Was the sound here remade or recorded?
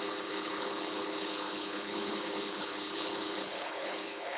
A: remade